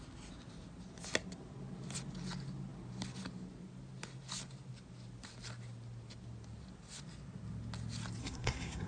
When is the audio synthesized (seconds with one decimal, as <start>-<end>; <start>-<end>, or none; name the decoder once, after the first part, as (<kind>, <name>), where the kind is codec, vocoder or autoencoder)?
8.2-8.9 (codec, SNAC)